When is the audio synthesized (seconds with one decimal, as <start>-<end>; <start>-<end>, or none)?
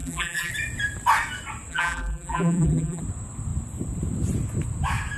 0.0-0.5; 1.7-3.0